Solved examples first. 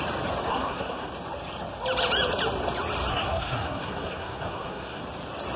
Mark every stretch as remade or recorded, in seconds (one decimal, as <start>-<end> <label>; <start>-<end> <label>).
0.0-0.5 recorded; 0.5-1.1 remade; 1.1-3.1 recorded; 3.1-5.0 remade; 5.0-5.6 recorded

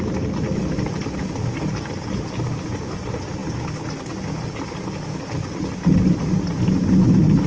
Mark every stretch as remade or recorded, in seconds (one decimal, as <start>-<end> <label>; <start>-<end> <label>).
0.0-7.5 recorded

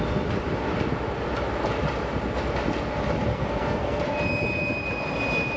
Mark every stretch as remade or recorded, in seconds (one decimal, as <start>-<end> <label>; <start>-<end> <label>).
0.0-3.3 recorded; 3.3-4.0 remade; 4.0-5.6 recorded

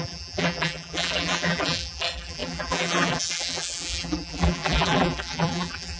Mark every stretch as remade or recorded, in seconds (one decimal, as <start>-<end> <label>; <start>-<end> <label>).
0.0-6.0 remade

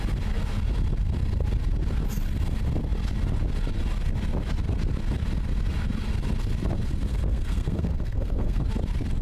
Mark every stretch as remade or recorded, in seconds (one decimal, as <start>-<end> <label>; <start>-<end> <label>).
0.0-7.1 recorded; 7.1-8.6 remade; 8.6-9.2 recorded

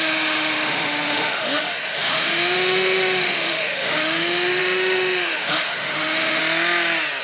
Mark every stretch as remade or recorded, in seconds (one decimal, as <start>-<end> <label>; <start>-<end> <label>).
0.0-6.4 remade; 6.4-7.2 recorded

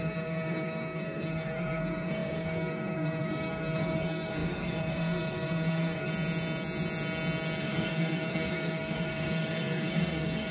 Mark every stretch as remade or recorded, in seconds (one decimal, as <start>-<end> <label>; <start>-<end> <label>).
0.0-6.1 remade; 6.1-7.6 recorded; 7.6-10.5 remade

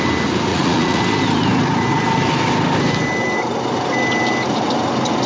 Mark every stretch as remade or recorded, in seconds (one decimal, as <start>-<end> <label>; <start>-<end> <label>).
0.0-0.5 recorded; 0.5-1.0 remade; 1.0-5.3 recorded